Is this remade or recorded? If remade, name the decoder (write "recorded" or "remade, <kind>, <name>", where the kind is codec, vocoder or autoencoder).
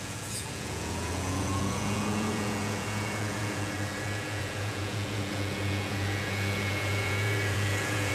remade, vocoder, Vocos